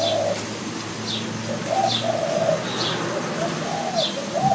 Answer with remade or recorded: recorded